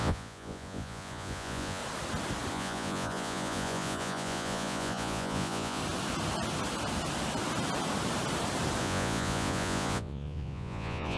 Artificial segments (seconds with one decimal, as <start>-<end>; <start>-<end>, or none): 0.0-1.8; 2.5-5.8; 8.8-11.2